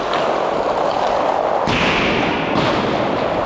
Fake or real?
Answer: real